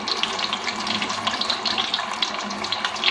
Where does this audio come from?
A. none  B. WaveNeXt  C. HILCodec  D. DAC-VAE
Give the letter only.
A